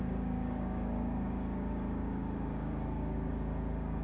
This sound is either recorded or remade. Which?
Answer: remade